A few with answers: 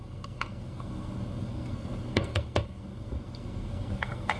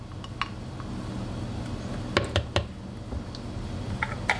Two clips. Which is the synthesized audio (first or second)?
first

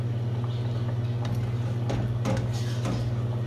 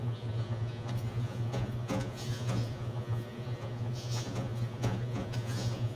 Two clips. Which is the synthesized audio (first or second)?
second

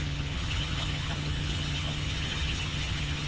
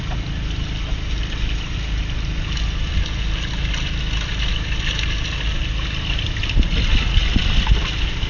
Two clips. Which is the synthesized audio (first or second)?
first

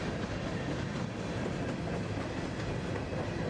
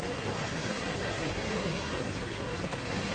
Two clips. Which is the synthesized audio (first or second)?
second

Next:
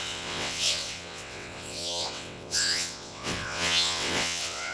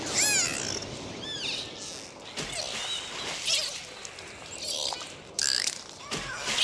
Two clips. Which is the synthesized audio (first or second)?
first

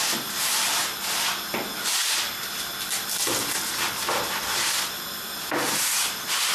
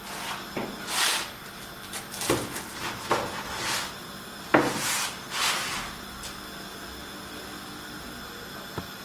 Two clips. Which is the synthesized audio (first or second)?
first